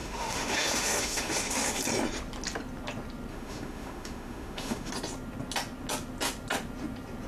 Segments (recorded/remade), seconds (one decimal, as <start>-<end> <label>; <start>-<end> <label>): 0.0-1.8 remade; 1.8-3.3 recorded; 3.3-4.9 remade; 4.9-7.3 recorded